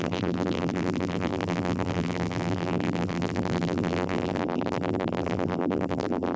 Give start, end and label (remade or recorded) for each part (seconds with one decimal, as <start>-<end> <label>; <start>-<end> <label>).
0.0-6.4 remade